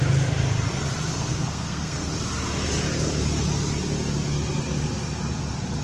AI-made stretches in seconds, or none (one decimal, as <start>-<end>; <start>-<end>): 1.1-2.1